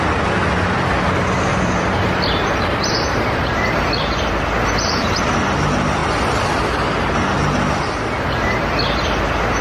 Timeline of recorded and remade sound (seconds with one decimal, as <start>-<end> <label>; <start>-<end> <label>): 0.0-1.5 recorded; 1.5-4.3 remade; 4.3-9.6 recorded